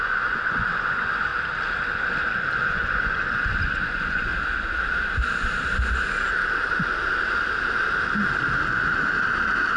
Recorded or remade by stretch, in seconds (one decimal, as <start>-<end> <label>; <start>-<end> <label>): 0.0-1.3 remade; 1.3-2.6 recorded; 2.6-4.3 remade; 4.3-9.8 recorded